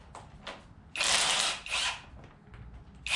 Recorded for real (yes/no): yes